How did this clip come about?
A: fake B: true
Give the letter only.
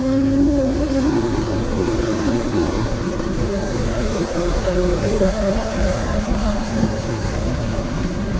A